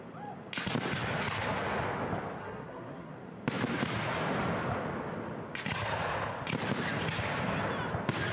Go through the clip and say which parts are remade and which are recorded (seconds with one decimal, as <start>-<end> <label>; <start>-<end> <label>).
0.0-2.4 recorded; 2.4-3.1 remade; 3.1-8.3 recorded